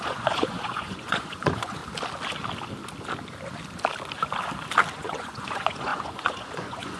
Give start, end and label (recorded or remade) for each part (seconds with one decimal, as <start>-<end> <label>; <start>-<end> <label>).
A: 0.0-1.8 remade; 1.8-4.9 recorded; 4.9-7.0 remade

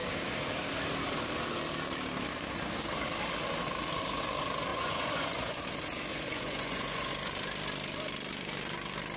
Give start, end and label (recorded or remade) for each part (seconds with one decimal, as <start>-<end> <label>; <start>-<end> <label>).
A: 0.0-4.7 recorded; 4.7-5.6 remade; 5.6-6.1 recorded; 6.1-7.1 remade; 7.1-9.2 recorded

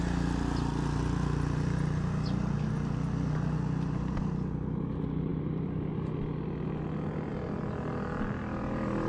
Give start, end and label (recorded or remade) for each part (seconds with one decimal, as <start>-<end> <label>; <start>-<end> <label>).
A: 0.0-9.1 recorded

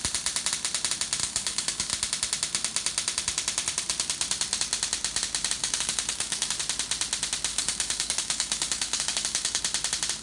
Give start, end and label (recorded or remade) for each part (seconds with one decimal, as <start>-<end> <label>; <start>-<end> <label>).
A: 0.0-1.2 recorded; 1.2-1.9 remade; 1.9-5.6 recorded; 5.6-6.6 remade; 6.6-7.5 recorded; 7.5-9.6 remade; 9.6-10.2 recorded

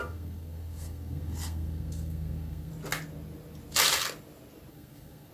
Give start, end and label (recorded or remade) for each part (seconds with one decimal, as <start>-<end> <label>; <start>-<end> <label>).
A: 0.0-2.7 remade; 2.7-4.7 recorded; 4.7-5.3 remade

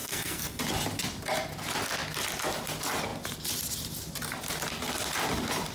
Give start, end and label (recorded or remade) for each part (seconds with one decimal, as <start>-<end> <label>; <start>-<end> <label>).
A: 0.0-0.6 remade; 0.6-5.7 recorded

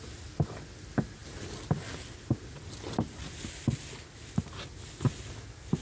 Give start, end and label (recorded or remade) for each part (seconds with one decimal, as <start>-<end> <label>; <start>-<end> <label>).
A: 0.0-5.8 recorded

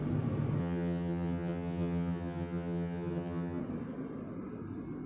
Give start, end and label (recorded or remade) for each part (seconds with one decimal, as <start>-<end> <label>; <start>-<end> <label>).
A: 0.0-0.6 recorded; 0.6-3.6 remade; 3.6-5.1 recorded